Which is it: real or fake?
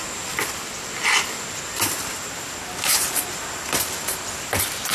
real